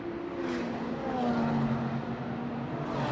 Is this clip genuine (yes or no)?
yes